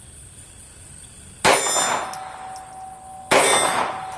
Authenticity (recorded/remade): recorded